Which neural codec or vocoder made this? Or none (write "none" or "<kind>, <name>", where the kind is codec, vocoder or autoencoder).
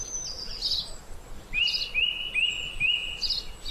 none